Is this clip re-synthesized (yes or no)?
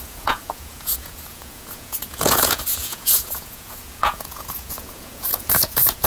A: yes